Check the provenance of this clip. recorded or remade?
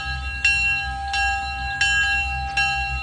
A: recorded